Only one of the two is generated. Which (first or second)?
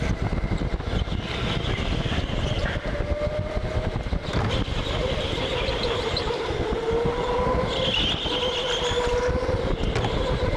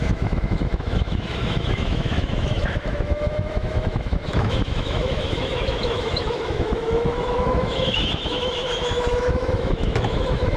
second